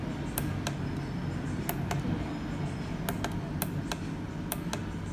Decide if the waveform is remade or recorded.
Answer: recorded